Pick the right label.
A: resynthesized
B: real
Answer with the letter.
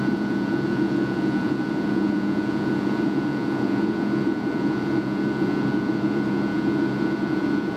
A